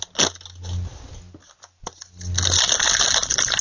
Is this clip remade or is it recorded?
recorded